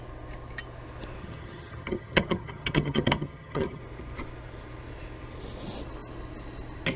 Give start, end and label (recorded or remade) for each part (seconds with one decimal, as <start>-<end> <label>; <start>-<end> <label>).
0.0-1.2 recorded; 1.2-3.8 remade; 3.8-7.0 recorded